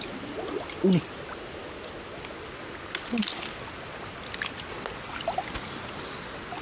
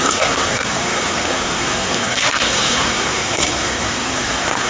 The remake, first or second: second